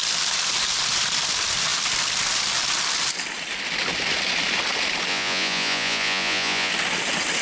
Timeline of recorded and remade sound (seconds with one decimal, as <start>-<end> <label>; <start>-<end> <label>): 0.0-5.1 recorded; 5.1-6.7 remade; 6.7-7.4 recorded